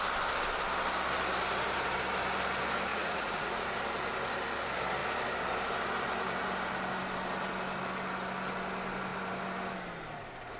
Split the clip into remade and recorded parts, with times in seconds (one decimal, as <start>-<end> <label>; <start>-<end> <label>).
0.0-2.9 recorded; 2.9-3.6 remade; 3.6-10.6 recorded

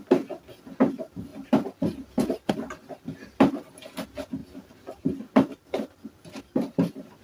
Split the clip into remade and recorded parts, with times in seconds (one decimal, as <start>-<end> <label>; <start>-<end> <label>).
0.0-4.4 recorded; 4.4-6.0 remade; 6.0-7.2 recorded